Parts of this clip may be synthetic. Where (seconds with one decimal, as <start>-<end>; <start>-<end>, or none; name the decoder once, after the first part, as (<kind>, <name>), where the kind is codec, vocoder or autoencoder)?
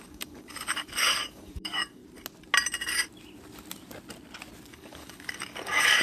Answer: 0.0-2.0 (codec, DAC); 4.7-6.0